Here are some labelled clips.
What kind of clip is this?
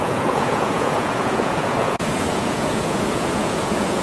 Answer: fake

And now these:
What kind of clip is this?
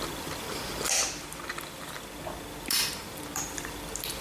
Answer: real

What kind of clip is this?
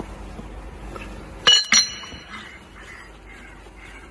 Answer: real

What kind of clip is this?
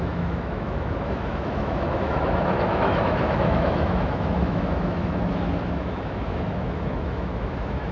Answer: fake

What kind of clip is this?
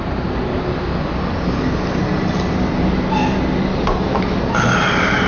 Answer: real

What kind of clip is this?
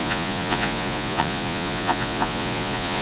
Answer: fake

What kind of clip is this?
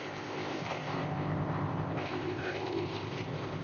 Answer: fake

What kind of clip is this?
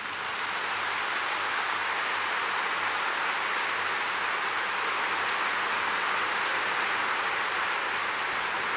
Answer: real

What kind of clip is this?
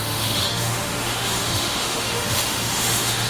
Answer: fake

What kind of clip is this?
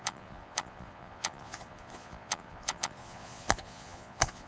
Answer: fake